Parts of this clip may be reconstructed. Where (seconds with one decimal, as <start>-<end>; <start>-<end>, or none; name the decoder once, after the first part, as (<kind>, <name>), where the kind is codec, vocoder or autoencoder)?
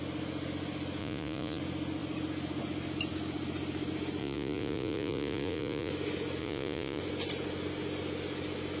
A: 1.0-1.6 (vocoder, Vocos); 4.2-5.9; 6.4-7.0